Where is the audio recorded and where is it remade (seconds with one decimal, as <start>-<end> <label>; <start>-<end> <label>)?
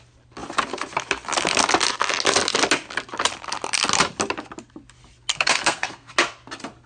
0.0-5.3 recorded; 5.3-6.1 remade; 6.1-6.9 recorded